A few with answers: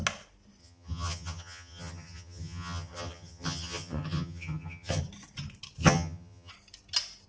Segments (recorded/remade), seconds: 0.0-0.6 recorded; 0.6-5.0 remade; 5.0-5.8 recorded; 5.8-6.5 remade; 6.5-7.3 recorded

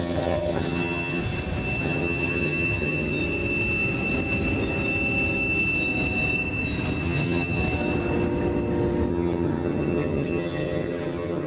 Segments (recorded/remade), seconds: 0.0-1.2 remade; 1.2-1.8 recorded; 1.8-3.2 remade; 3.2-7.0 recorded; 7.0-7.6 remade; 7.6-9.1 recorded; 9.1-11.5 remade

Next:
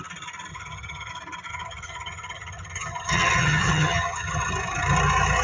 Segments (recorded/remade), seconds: 0.0-0.5 recorded; 0.5-1.1 remade; 1.1-1.5 recorded; 1.5-4.5 remade; 4.5-5.4 recorded

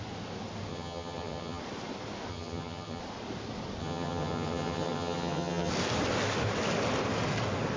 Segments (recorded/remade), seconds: 0.0-0.7 recorded; 0.7-1.6 remade; 1.6-2.3 recorded; 2.3-3.0 remade; 3.0-3.8 recorded; 3.8-5.7 remade; 5.7-7.8 recorded

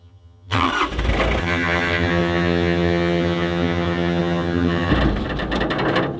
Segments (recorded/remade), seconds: 0.0-0.7 remade; 0.7-1.4 recorded; 1.4-4.9 remade; 4.9-6.2 recorded